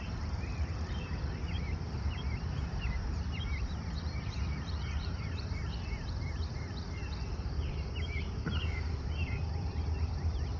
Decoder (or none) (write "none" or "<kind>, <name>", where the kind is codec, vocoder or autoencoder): vocoder, BigVGAN v2